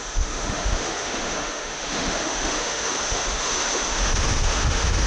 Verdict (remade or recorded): remade